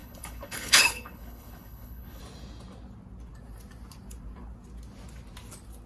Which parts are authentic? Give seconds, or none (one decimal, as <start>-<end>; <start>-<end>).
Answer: 2.2-5.9